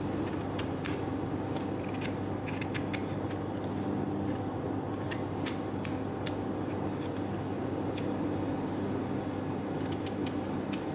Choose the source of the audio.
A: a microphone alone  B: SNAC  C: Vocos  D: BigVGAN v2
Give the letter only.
A